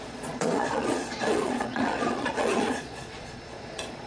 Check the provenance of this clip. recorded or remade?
remade